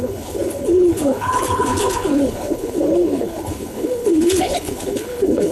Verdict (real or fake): fake